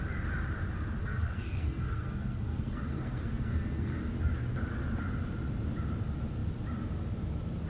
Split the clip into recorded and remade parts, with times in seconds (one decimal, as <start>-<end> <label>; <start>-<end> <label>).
0.0-1.0 recorded; 1.0-4.1 remade; 4.1-7.7 recorded